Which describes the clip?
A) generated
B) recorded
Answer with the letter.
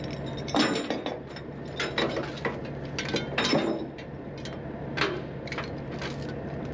B